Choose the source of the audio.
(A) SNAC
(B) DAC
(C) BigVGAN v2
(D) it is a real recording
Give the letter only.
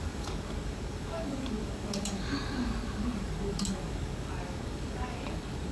B